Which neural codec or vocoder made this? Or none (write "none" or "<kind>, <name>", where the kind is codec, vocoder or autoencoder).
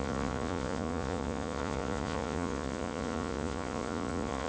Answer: vocoder, Vocos